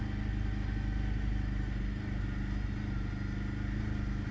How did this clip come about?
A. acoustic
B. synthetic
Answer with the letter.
A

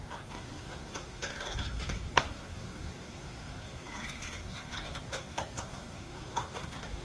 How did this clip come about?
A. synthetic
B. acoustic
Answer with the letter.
A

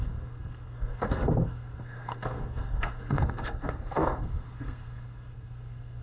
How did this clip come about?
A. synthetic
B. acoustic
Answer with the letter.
A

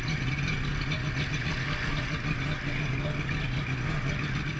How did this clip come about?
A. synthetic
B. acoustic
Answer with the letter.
B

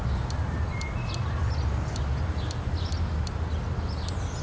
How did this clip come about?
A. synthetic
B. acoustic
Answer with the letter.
B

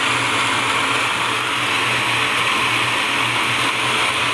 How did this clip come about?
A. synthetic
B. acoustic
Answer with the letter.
B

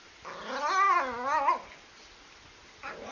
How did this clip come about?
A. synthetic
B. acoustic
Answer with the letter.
B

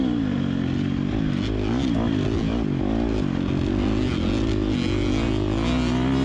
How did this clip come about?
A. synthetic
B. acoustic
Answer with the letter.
B